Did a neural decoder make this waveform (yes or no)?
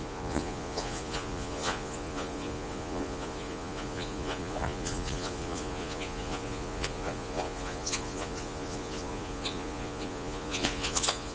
yes